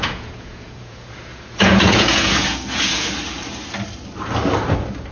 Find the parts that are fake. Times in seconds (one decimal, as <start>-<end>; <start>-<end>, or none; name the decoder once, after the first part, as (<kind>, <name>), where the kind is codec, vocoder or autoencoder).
0.0-3.1 (vocoder, Vocos)

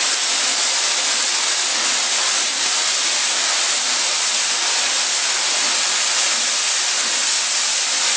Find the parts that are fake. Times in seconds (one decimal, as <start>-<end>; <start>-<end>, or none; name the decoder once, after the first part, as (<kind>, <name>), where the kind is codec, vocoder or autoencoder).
2.5-4.3 (vocoder, BigVGAN v2)